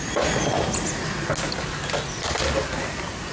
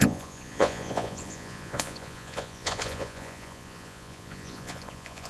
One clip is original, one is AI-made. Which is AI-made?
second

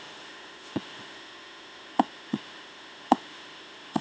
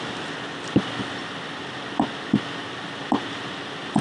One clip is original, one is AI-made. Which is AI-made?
first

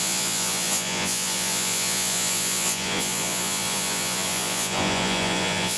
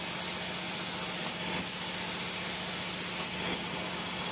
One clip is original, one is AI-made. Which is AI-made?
first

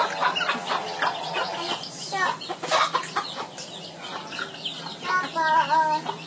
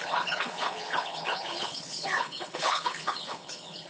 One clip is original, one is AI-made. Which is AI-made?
second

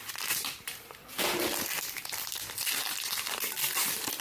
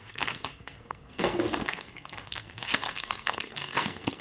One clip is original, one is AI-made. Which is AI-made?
second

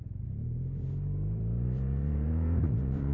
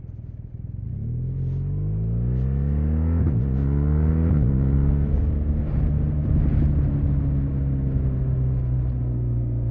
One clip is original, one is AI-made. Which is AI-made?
first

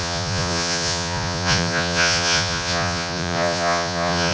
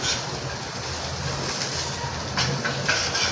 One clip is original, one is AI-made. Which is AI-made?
first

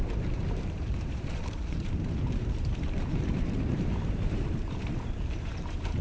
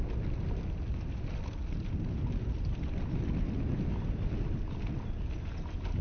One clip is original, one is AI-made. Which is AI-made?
first